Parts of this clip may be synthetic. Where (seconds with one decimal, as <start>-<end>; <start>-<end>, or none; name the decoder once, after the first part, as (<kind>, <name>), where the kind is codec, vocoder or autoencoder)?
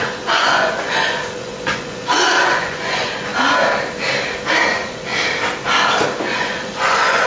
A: 0.0-3.3 (vocoder, Vocos); 4.6-5.1; 6.2-7.3